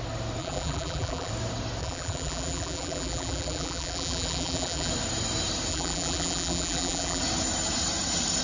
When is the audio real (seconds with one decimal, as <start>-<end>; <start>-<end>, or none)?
0.0-0.4; 1.3-1.8; 4.9-5.7; 7.2-8.4